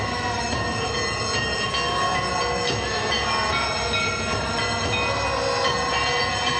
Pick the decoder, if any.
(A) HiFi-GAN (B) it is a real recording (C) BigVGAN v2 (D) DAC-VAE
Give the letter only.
B